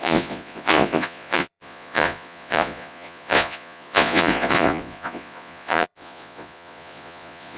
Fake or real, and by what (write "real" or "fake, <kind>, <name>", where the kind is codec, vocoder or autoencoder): fake, vocoder, Vocos